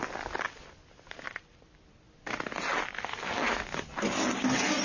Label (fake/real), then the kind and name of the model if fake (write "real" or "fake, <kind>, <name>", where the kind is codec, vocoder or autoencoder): real